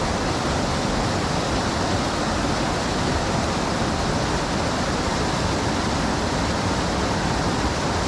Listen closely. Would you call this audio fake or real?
real